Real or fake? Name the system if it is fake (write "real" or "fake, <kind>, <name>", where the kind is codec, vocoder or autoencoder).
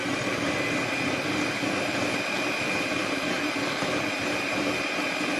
fake, vocoder, BigVGAN v2